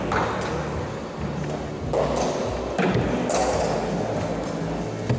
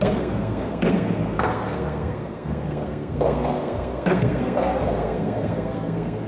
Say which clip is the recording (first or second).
first